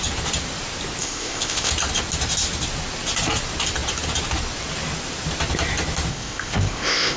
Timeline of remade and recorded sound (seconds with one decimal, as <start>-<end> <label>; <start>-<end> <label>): 0.0-1.0 recorded; 1.0-1.7 remade; 1.7-6.1 recorded; 6.1-7.2 remade